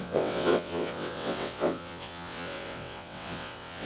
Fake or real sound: fake